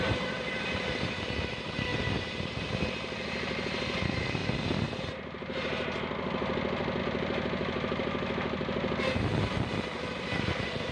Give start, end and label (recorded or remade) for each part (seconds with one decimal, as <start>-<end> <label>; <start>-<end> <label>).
0.0-10.9 recorded

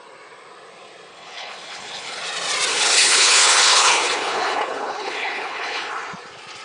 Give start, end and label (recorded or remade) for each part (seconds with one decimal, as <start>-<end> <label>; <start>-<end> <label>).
0.0-1.1 recorded; 1.1-2.2 remade; 2.2-2.7 recorded; 2.7-5.9 remade; 5.9-6.6 recorded

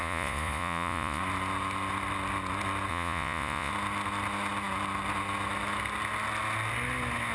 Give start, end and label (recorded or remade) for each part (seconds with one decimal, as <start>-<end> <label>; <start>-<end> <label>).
0.0-1.2 remade; 1.2-2.9 recorded; 2.9-3.7 remade; 3.7-7.3 recorded

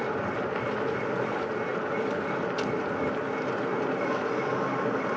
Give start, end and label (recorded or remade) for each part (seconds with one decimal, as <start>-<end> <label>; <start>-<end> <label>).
0.0-5.2 recorded

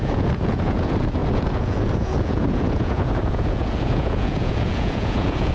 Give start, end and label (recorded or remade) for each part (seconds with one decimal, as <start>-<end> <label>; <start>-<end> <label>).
0.0-5.5 remade

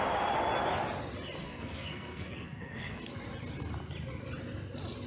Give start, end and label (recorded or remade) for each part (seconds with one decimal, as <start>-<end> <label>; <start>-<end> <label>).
0.0-1.4 recorded; 1.4-3.0 remade; 3.0-5.1 recorded

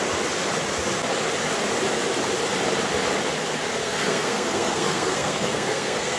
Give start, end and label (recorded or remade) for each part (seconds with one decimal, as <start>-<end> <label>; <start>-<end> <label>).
0.0-3.8 recorded; 3.8-6.2 remade

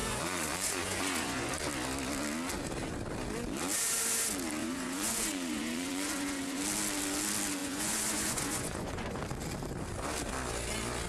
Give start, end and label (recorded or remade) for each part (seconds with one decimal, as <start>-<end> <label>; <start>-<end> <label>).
0.0-1.5 remade; 1.5-4.6 recorded; 4.6-6.6 remade; 6.6-7.6 recorded; 7.6-9.2 remade; 9.2-11.1 recorded